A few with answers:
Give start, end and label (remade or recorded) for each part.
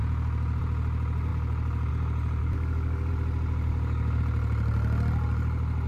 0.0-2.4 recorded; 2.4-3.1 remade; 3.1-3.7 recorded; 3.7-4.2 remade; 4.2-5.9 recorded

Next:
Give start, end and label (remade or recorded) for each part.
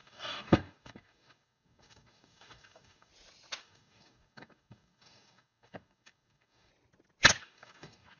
0.0-3.1 remade; 3.1-3.6 recorded; 3.6-6.7 remade; 6.7-7.4 recorded; 7.4-8.2 remade